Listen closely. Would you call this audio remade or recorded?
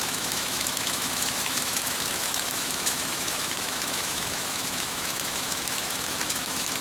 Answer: remade